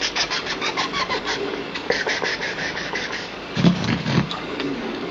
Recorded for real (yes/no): no